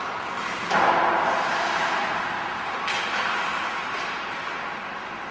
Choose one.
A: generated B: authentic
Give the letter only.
B